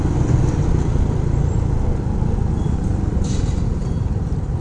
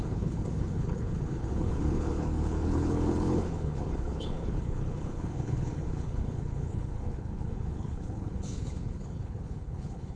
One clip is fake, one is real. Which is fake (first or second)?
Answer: second